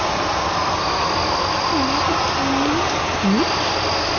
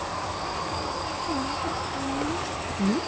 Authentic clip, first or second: first